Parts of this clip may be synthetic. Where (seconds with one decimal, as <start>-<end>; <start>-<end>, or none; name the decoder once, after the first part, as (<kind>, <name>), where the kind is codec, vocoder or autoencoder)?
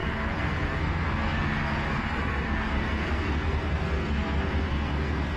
0.0-5.4 (codec, SNAC)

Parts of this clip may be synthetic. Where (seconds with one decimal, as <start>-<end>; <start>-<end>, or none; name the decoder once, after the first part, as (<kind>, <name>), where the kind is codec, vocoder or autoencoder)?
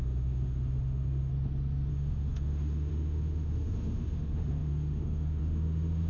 0.0-1.3 (autoencoder, DAC-VAE); 1.9-6.1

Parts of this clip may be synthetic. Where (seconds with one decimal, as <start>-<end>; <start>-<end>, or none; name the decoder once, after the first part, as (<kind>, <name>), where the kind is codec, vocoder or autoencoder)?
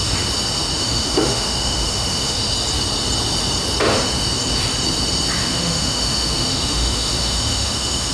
0.8-2.4 (autoencoder, DAC-VAE); 5.4-8.1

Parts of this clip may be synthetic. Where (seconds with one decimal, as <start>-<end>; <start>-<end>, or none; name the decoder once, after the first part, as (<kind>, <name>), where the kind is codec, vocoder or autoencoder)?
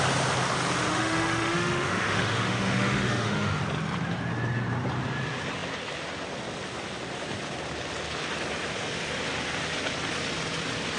0.9-3.6 (autoencoder, DAC-VAE)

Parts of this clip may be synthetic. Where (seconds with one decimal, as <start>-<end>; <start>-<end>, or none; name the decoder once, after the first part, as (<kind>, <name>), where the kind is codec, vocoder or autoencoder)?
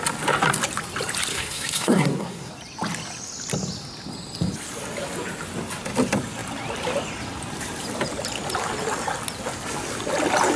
1.3-2.5 (codec, SNAC)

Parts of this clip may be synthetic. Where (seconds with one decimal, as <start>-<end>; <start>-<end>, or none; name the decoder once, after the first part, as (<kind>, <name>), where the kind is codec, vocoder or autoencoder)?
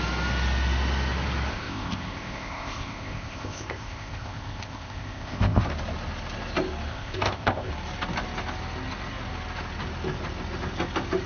1.5-5.6 (codec, ZipCodec); 6.9-7.7